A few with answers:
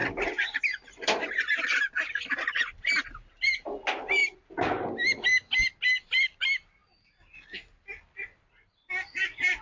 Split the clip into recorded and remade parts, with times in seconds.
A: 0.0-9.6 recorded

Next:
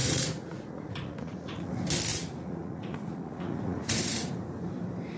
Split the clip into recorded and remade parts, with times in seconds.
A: 0.0-1.7 remade; 1.7-2.1 recorded; 2.1-4.3 remade; 4.3-5.2 recorded

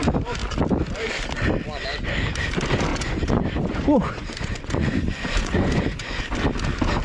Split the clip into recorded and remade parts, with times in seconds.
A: 0.0-2.9 recorded; 2.9-6.2 remade; 6.2-7.0 recorded

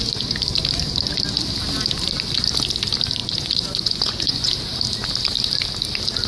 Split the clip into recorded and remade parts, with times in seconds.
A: 0.0-3.2 recorded; 3.2-4.5 remade; 4.5-6.3 recorded

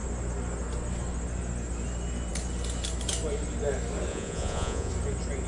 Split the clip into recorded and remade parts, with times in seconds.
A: 0.0-4.1 recorded; 4.1-4.9 remade; 4.9-5.5 recorded